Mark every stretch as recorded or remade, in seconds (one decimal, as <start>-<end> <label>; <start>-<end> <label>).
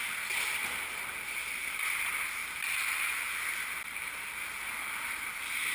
0.0-5.7 recorded